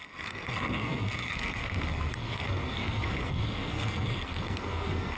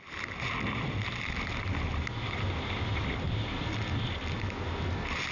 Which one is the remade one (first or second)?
first